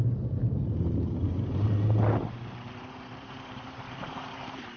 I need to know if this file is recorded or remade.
remade